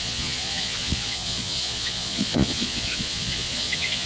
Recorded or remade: remade